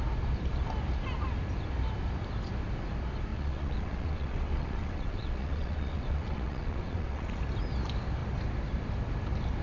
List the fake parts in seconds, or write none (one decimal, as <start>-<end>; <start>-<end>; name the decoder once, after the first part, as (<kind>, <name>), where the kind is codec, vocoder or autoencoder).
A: 3.3-7.4 (vocoder, WaveNeXt)